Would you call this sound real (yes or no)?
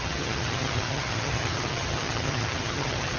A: no